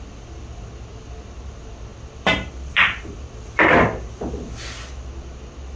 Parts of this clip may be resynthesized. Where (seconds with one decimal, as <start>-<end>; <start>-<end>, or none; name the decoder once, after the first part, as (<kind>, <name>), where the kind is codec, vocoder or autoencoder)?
none